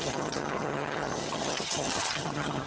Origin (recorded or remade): remade